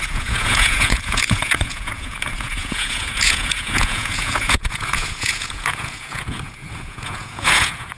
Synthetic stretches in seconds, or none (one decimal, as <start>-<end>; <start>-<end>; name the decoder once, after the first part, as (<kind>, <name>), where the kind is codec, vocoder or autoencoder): 0.0-8.0 (vocoder, Vocos)